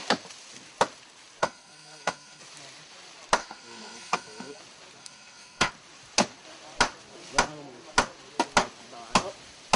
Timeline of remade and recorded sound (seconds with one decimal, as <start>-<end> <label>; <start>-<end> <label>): 0.0-1.4 recorded; 1.4-2.4 remade; 2.4-3.4 recorded; 3.4-4.6 remade; 4.6-5.0 recorded; 5.0-5.7 remade; 5.7-9.8 recorded